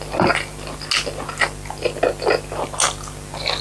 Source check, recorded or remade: recorded